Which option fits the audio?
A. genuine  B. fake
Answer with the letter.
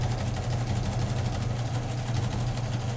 A